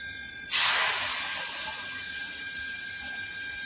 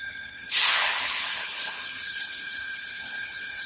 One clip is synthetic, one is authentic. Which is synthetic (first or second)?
second